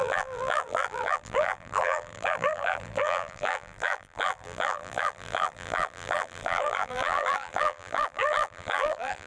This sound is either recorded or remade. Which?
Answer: remade